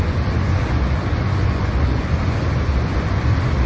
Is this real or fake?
fake